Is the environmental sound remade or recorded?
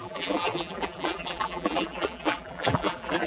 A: remade